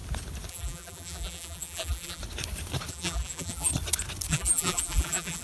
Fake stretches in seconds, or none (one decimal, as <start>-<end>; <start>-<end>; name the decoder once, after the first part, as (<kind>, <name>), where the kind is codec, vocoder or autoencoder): 0.5-2.2 (vocoder, BigVGAN v2); 2.9-3.7; 4.3-5.4